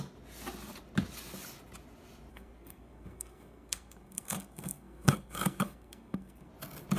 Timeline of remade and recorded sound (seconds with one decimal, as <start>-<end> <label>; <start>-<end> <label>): 0.0-2.3 recorded; 2.3-6.5 remade; 6.5-7.0 recorded